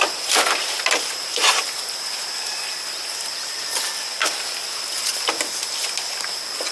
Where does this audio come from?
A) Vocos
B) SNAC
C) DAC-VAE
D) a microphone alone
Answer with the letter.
D